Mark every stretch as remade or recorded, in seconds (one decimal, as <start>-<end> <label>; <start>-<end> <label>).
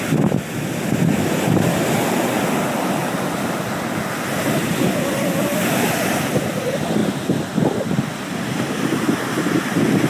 0.0-3.0 recorded; 3.0-3.7 remade; 3.7-10.1 recorded